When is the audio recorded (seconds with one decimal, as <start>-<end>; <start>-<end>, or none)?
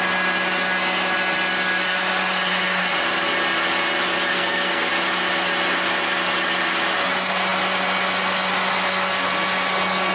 0.0-4.3; 4.9-10.1